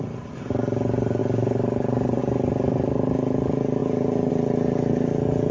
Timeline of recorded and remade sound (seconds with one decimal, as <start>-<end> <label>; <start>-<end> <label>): 0.0-1.2 recorded; 1.2-2.2 remade; 2.2-3.8 recorded; 3.8-4.3 remade; 4.3-5.5 recorded